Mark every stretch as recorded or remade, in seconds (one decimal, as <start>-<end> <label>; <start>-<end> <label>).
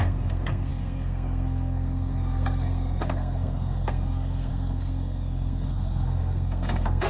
0.0-7.1 remade